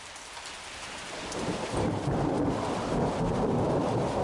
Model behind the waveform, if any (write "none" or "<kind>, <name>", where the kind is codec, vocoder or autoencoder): vocoder, BigVGAN v2